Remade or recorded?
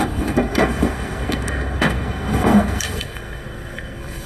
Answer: remade